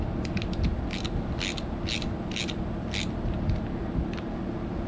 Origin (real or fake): real